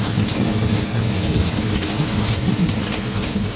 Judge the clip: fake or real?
fake